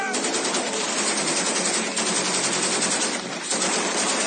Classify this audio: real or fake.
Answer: real